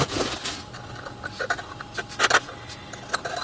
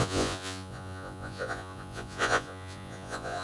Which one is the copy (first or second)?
second